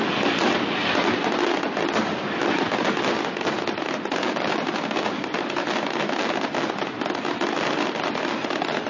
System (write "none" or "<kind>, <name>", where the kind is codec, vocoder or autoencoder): none